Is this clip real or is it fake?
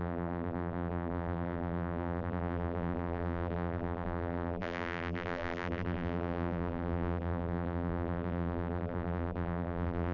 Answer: fake